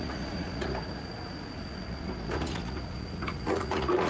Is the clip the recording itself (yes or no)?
no